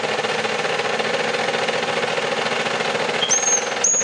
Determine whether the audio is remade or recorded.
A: recorded